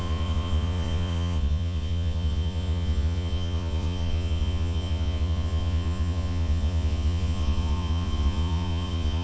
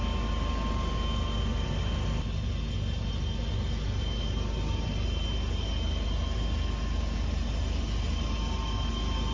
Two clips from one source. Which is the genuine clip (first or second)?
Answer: second